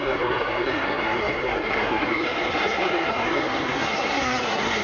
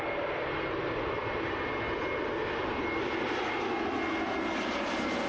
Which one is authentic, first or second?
second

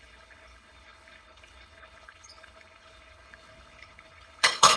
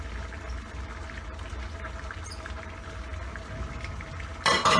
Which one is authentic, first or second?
second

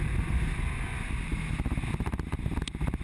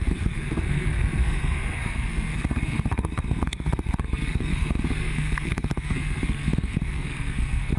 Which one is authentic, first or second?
first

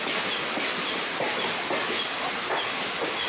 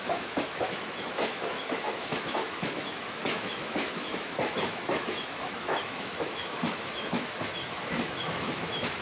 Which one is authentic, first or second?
first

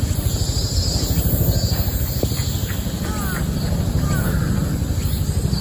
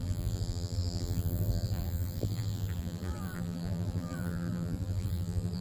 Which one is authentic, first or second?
first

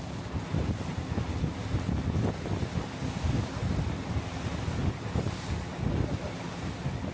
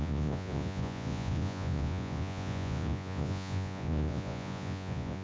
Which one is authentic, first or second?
first